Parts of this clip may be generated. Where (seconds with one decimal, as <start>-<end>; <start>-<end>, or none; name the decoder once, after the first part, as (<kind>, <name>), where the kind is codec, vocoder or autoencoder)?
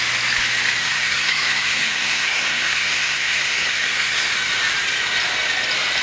0.8-4.3 (codec, SNAC)